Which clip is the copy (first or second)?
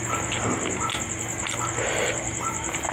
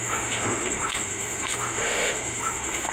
second